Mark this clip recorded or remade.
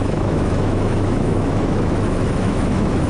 remade